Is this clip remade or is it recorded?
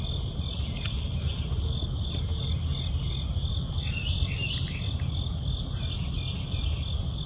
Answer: recorded